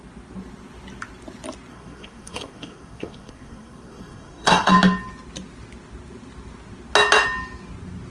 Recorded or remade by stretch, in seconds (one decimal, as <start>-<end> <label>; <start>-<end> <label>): 0.0-1.7 recorded; 1.7-4.7 remade; 4.7-8.1 recorded